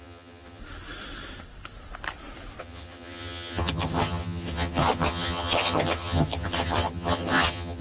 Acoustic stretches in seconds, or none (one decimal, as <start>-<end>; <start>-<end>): 0.6-2.6